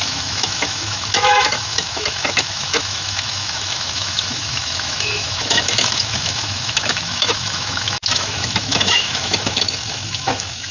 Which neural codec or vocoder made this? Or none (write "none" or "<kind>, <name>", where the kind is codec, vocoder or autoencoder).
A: autoencoder, DAC-VAE